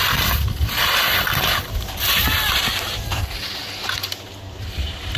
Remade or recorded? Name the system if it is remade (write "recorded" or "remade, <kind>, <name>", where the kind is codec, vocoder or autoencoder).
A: recorded